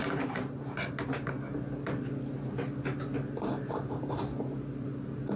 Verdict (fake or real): real